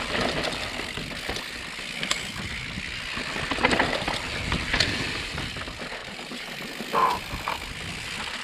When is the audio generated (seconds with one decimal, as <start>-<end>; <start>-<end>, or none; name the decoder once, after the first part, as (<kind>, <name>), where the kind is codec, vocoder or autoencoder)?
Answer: 6.0-6.6 (vocoder, BigVGAN v2)

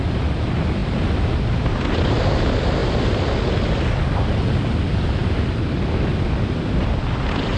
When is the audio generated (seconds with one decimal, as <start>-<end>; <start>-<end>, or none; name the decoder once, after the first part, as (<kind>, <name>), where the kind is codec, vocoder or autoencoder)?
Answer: none